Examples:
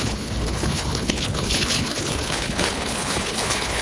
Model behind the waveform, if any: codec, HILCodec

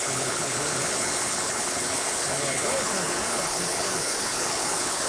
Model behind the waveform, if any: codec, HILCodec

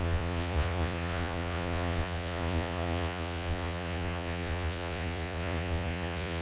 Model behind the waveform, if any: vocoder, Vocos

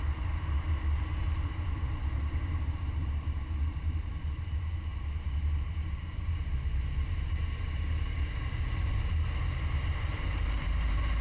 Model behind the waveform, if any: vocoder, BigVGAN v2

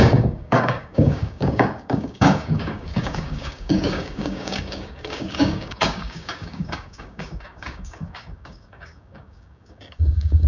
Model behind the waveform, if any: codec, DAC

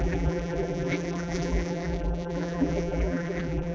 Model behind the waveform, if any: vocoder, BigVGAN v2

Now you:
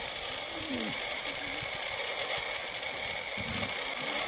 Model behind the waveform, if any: none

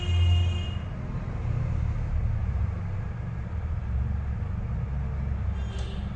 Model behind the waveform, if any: none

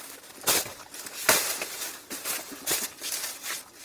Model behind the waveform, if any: vocoder, BigVGAN v2